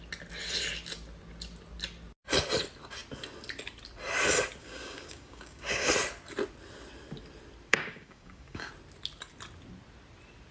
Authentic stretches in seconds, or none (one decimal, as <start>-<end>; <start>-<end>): 0.0-4.6; 5.9-7.7; 8.7-10.5